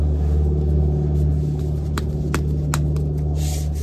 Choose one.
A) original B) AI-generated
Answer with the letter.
A